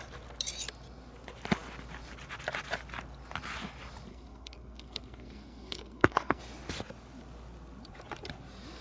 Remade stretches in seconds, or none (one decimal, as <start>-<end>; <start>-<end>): 4.1-6.4